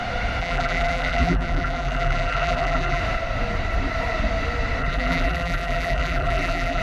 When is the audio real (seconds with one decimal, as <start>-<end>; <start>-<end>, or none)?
0.0-0.4; 3.0-4.8